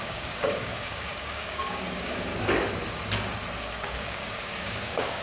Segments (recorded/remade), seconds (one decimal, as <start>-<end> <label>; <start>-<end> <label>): 0.0-2.3 remade; 2.3-3.6 recorded; 3.6-5.2 remade